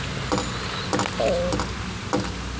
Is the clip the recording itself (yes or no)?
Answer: yes